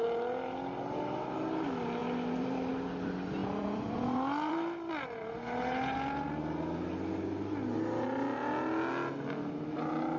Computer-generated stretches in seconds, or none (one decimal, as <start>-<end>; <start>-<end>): 2.0-2.7; 3.4-5.2